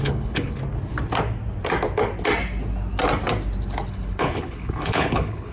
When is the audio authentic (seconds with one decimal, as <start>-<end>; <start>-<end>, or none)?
0.6-3.9